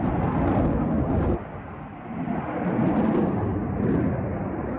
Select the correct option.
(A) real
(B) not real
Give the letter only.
A